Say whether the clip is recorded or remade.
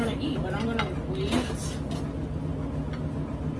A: recorded